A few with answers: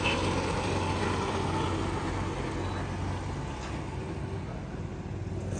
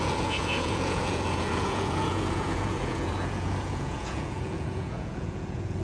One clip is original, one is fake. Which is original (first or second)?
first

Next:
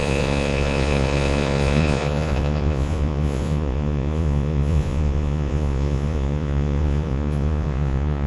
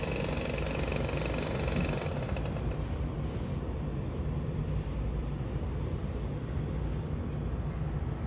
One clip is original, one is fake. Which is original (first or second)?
second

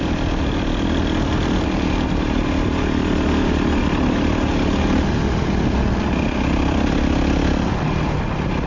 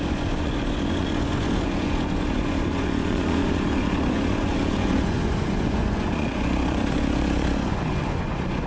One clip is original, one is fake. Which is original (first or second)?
first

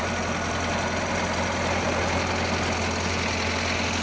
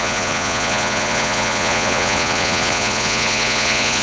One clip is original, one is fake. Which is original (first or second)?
first